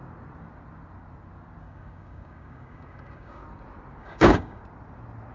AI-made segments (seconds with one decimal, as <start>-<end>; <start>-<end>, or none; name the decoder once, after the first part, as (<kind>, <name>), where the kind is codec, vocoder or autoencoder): 1.6-3.4 (codec, DAC); 4.0-4.6